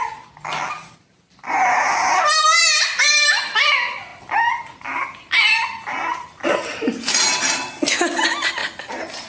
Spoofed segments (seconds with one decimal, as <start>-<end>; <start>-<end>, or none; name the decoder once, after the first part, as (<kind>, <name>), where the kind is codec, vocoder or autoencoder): none